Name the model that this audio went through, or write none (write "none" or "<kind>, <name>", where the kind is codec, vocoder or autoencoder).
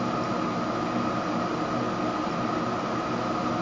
none